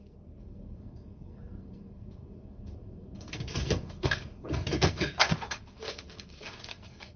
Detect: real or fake fake